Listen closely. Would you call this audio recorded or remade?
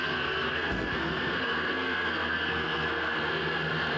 remade